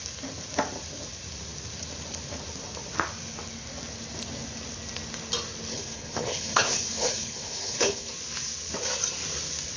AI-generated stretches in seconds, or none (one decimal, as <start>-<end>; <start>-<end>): 5.7-8.1